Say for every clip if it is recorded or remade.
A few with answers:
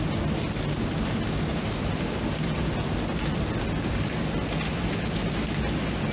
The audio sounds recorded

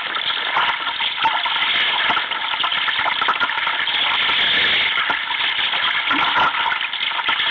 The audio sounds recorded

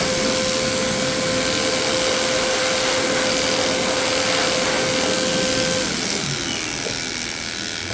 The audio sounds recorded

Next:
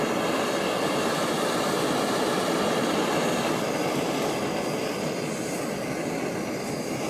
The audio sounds remade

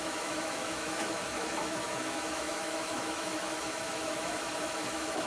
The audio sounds remade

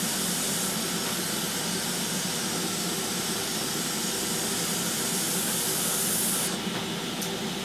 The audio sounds recorded